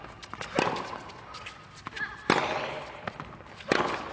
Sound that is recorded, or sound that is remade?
recorded